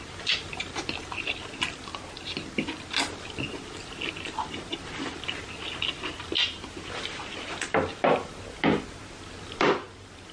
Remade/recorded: recorded